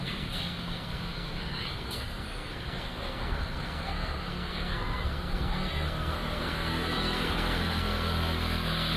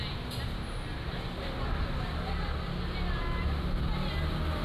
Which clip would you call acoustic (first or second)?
second